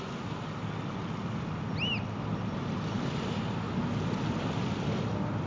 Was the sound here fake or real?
real